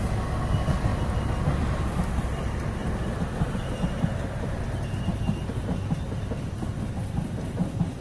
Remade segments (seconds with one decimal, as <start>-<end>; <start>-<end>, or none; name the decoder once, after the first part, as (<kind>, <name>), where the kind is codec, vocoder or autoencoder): none